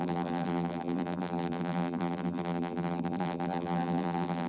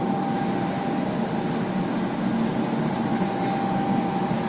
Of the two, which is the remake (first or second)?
first